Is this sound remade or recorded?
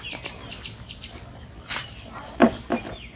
remade